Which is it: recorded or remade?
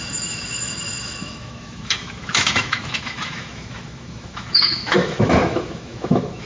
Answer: remade